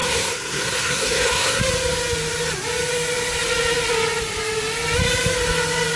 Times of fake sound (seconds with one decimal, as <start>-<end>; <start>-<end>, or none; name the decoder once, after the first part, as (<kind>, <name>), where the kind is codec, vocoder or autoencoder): 0.0-1.6 (codec, SNAC)